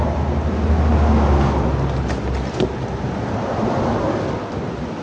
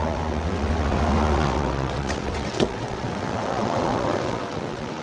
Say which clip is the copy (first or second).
second